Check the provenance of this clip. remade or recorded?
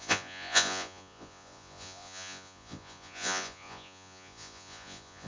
remade